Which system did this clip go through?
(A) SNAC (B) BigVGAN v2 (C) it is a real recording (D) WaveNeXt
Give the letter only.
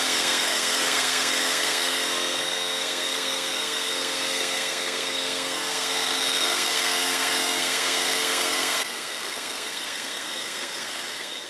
A